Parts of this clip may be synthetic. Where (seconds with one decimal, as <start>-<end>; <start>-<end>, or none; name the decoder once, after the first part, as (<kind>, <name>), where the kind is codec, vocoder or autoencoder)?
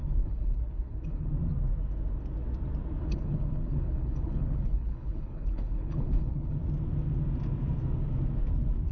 0.0-1.3 (codec, HILCodec); 3.0-6.6